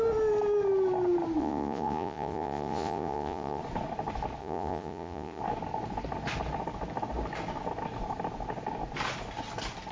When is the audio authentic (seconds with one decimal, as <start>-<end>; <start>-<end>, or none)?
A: 0.0-1.4; 3.6-4.4; 5.4-9.9

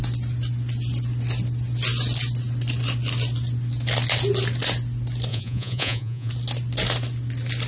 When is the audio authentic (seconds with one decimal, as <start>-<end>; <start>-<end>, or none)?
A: 0.0-5.3; 6.3-7.7

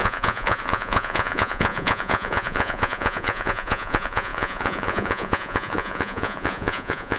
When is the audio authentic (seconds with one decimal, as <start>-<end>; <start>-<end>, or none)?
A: none